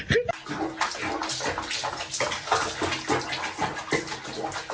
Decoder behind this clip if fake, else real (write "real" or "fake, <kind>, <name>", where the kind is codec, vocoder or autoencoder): real